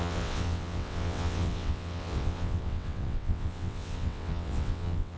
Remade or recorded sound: remade